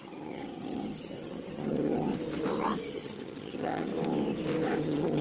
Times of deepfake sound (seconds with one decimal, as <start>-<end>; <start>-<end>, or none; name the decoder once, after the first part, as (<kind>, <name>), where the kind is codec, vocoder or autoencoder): 0.0-2.1 (vocoder, HiFi-GAN); 2.9-3.9; 4.8-5.2